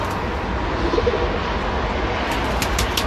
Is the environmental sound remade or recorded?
recorded